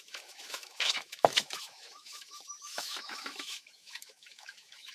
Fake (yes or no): yes